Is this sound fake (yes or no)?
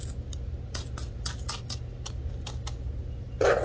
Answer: no